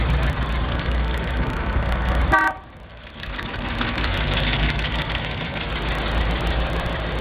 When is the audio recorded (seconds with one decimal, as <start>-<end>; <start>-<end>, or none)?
0.0-0.7; 2.2-2.9; 5.7-7.2